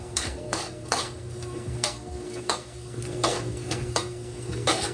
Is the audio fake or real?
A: fake